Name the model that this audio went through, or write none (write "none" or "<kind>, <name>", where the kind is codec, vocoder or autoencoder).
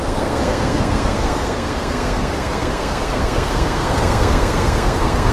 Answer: codec, SNAC